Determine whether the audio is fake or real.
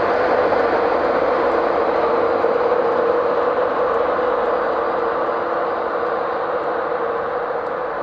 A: real